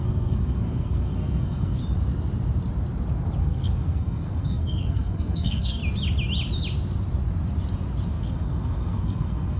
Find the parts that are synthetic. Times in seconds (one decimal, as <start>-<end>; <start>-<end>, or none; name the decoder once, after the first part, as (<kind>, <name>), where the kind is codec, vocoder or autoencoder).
0.0-1.8 (codec, SNAC); 3.4-5.8; 8.1-9.6